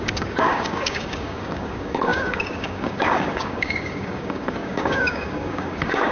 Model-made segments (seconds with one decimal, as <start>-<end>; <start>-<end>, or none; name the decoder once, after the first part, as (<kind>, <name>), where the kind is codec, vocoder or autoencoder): 0.0-6.1 (codec, DAC)